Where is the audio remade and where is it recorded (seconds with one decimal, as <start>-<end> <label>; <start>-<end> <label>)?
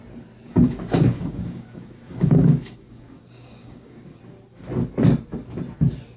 0.0-0.5 recorded; 0.5-4.2 remade; 4.2-6.2 recorded